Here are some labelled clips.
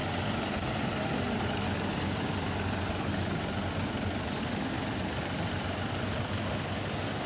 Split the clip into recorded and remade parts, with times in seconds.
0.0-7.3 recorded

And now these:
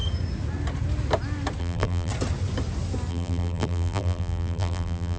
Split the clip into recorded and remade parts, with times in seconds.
0.0-1.6 recorded; 1.6-2.1 remade; 2.1-3.1 recorded; 3.1-5.2 remade

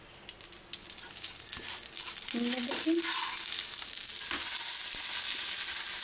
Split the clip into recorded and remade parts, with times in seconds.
0.0-6.0 recorded

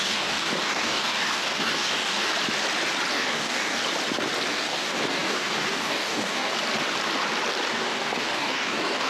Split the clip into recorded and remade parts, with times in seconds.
0.0-2.3 remade; 2.3-3.1 recorded; 3.1-3.8 remade; 3.8-4.5 recorded; 4.5-6.5 remade; 6.5-7.7 recorded; 7.7-9.1 remade

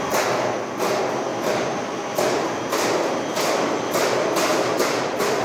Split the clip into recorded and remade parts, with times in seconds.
0.0-5.4 recorded

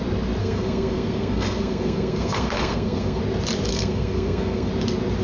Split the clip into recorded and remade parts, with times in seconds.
0.0-0.4 recorded; 0.4-3.2 remade; 3.2-3.7 recorded; 3.7-4.7 remade; 4.7-5.2 recorded

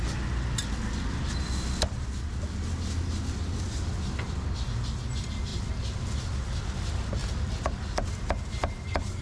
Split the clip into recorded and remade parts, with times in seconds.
0.0-7.2 recorded; 7.2-9.2 remade

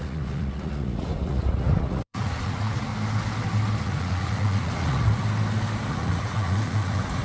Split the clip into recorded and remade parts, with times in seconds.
0.0-2.9 remade; 2.9-3.8 recorded; 3.8-5.2 remade; 5.2-5.9 recorded; 5.9-7.2 remade